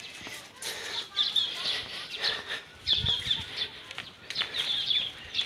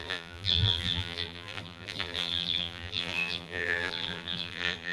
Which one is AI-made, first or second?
second